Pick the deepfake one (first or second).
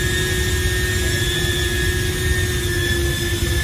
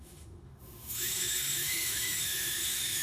second